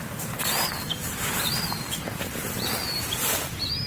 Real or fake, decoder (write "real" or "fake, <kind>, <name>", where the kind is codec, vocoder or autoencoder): fake, vocoder, BigVGAN v2